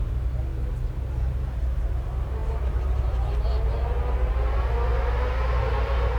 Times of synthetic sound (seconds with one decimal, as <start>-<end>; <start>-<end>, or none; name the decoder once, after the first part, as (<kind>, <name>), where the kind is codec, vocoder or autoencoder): 2.4-4.3 (vocoder, BigVGAN v2)